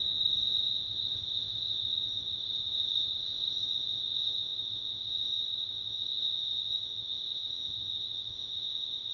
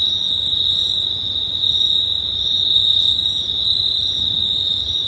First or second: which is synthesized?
first